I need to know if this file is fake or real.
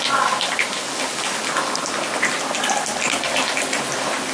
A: real